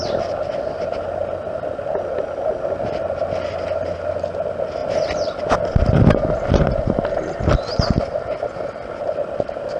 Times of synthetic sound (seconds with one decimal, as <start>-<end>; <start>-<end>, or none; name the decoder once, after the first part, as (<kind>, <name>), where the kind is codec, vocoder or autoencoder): none